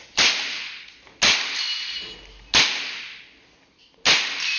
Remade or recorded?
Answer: recorded